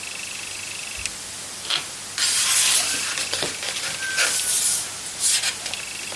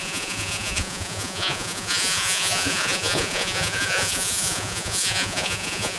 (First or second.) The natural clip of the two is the first